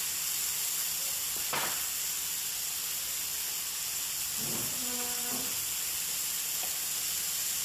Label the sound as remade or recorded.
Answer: recorded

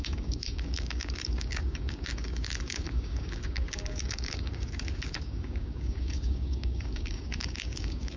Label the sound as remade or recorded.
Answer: remade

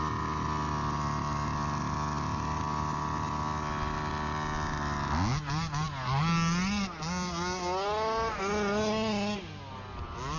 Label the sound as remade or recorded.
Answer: recorded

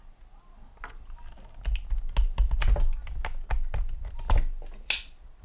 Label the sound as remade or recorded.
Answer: recorded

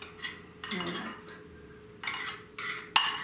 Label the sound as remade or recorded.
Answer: recorded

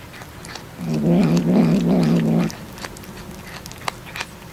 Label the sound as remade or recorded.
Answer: recorded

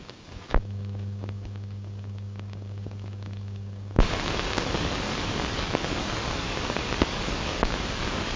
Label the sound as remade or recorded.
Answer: remade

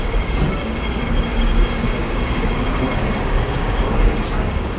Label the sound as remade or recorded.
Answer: remade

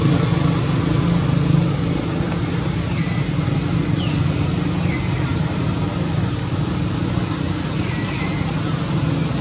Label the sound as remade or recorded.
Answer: recorded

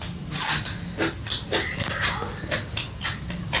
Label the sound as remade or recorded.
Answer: recorded